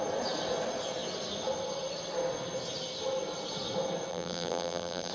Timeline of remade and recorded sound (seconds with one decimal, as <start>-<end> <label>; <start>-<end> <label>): 0.0-4.1 recorded; 4.1-5.1 remade